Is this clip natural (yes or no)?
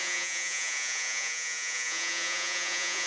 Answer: no